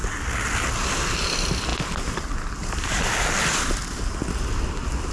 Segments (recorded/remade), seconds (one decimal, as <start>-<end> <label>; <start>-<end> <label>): 0.0-5.1 recorded